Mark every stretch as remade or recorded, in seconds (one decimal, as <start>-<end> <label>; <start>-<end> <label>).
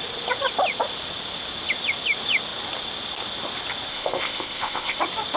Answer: 0.0-3.9 recorded; 3.9-5.0 remade; 5.0-5.4 recorded